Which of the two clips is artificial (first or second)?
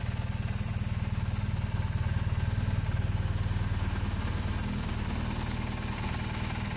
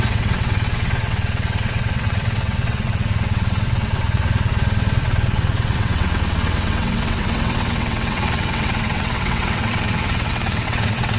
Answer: second